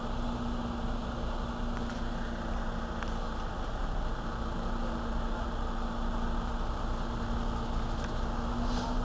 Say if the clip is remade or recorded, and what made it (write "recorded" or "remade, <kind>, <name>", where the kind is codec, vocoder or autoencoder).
recorded